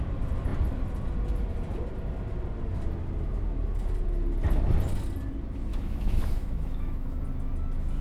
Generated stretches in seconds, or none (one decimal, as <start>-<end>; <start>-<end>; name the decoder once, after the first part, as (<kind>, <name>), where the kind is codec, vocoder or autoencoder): 5.7-7.2 (autoencoder, DAC-VAE)